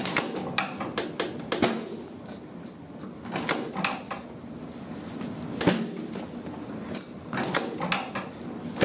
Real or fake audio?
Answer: real